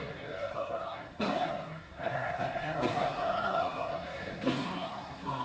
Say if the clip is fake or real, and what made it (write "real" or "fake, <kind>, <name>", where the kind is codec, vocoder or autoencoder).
fake, codec, SNAC